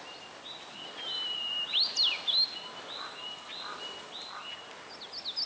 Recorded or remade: recorded